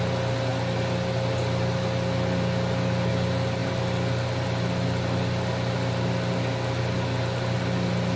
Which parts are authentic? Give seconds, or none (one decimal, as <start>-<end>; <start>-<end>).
0.0-8.2